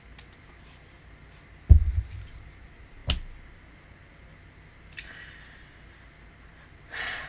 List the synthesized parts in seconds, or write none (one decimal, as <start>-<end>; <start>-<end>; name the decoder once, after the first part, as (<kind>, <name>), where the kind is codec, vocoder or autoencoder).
none